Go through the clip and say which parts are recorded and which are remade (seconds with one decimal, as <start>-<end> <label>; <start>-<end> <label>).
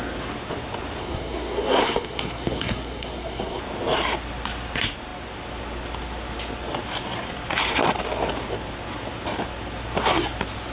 0.0-1.0 recorded; 1.0-3.6 remade; 3.6-10.7 recorded